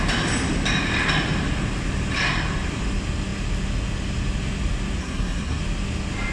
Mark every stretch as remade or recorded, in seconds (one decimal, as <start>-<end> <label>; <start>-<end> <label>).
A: 0.0-5.0 recorded; 5.0-5.6 remade; 5.6-6.3 recorded